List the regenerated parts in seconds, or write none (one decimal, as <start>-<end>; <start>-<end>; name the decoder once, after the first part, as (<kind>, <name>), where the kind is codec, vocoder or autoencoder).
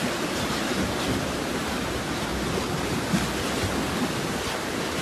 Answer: 0.0-2.3 (vocoder, BigVGAN v2); 4.0-5.0